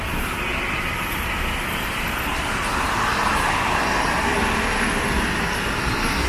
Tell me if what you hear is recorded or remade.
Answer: recorded